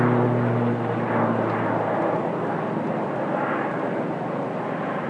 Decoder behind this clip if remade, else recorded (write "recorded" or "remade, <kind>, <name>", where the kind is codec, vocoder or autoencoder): recorded